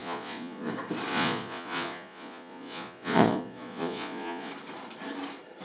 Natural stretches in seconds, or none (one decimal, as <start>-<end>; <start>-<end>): 0.7-1.1; 4.5-5.6